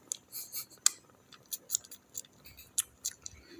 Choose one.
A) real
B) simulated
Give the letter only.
A